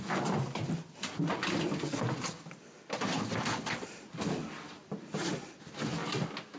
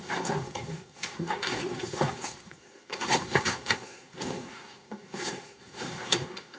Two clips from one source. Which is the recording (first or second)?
first